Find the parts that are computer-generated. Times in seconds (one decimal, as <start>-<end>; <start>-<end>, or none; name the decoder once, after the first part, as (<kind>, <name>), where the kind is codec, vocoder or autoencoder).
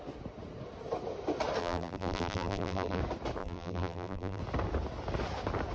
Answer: 1.6-3.0 (vocoder, BigVGAN v2); 3.4-4.4